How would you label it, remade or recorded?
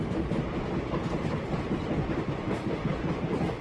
remade